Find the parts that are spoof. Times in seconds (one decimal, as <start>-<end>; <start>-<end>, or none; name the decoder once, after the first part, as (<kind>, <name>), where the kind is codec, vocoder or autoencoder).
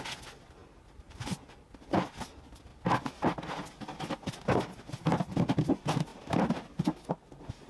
none